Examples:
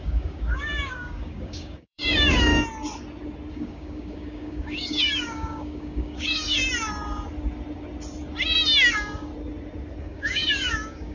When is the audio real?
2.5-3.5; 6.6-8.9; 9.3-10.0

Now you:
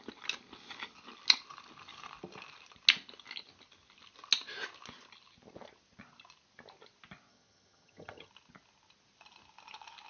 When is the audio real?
0.0-7.3; 8.3-10.1

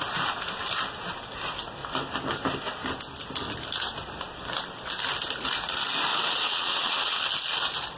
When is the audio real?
0.0-6.1; 7.2-8.0

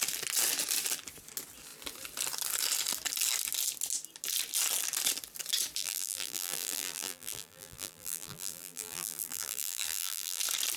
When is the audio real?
0.0-5.8; 10.4-10.8